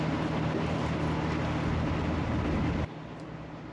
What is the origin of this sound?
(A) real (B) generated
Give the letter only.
A